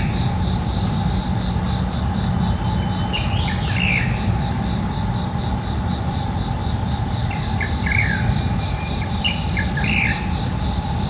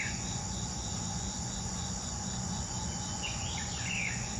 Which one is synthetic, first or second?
second